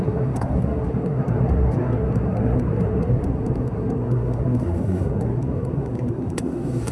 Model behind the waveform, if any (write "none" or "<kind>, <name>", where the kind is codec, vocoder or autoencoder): codec, SNAC